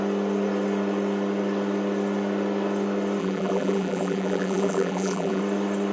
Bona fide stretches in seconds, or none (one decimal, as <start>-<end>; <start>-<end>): 0.0-3.2; 5.4-5.9